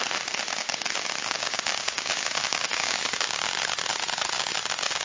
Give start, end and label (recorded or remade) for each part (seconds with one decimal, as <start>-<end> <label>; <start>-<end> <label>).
0.0-1.2 recorded; 1.2-3.5 remade; 3.5-5.0 recorded

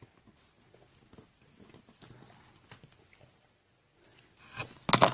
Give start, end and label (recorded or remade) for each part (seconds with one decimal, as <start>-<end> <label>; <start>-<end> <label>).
0.0-5.1 recorded